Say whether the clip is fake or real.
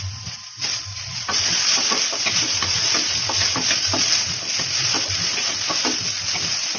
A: real